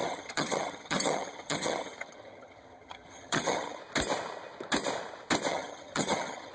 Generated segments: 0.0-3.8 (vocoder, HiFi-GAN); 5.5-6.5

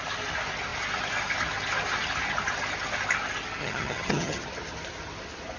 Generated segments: 3.6-4.4 (vocoder, HiFi-GAN)